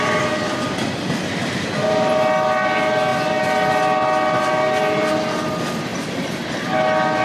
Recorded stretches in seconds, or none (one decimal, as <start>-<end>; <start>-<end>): 0.0-5.9; 6.5-7.2